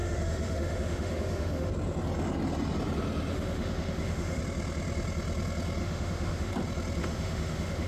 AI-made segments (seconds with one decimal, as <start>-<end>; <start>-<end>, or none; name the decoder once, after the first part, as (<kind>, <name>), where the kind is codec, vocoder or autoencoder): 0.0-1.7 (autoencoder, DAC-VAE); 3.3-4.4; 5.8-6.5; 7.0-7.9